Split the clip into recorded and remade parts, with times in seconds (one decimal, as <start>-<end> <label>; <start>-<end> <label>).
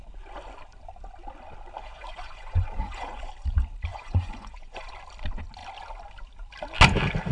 0.0-1.8 recorded; 1.8-3.3 remade; 3.3-3.9 recorded; 3.9-4.9 remade; 4.9-7.3 recorded